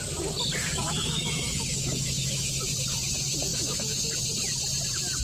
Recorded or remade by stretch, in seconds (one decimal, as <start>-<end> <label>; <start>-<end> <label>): 0.0-0.6 recorded; 0.6-2.5 remade; 2.5-3.5 recorded; 3.5-4.1 remade; 4.1-5.2 recorded